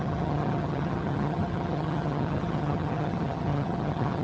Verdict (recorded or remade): remade